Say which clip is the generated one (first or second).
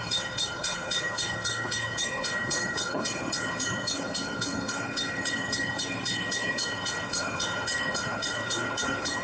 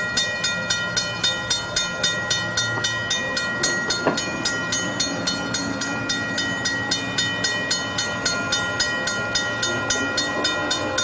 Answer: first